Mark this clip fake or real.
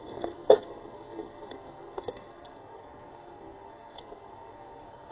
fake